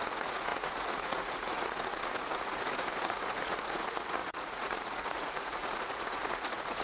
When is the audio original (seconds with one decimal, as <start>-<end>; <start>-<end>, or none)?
none